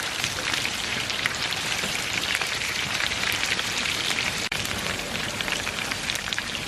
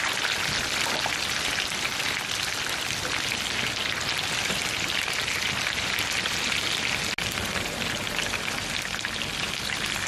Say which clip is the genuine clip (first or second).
second